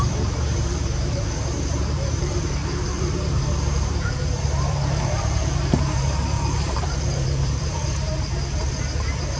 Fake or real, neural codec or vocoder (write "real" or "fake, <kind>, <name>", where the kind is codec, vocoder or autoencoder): fake, vocoder, BigVGAN v2